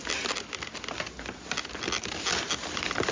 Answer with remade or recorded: recorded